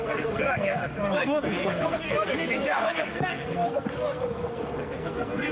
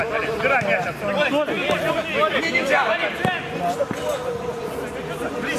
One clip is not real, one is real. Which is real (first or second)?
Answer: second